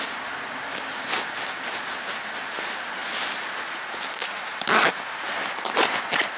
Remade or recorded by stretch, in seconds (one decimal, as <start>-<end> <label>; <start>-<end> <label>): 0.0-6.4 recorded